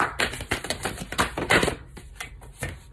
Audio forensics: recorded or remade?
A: remade